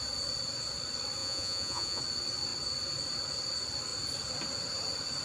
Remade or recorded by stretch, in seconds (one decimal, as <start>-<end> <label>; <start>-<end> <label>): 0.0-1.2 recorded; 1.2-2.0 remade; 2.0-5.2 recorded

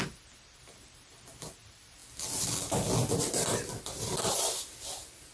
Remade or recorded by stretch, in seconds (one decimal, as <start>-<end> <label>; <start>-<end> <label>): 0.0-5.3 recorded

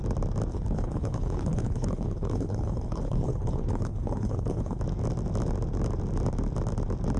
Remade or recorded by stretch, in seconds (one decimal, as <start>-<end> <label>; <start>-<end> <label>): 0.0-0.5 recorded; 0.5-4.8 remade; 4.8-7.2 recorded

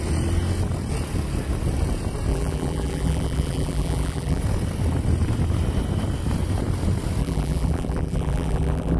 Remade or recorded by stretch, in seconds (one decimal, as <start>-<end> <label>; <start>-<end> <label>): 0.0-2.3 recorded; 2.3-4.4 remade; 4.4-7.2 recorded; 7.2-9.0 remade